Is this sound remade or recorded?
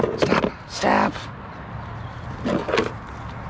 recorded